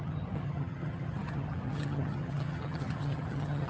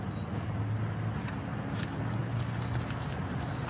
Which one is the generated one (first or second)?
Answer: first